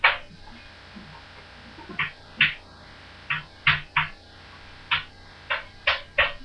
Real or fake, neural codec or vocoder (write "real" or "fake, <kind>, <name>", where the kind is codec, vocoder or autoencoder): real